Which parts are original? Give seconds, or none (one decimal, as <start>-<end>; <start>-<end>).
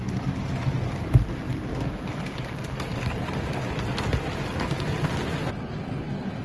0.0-6.4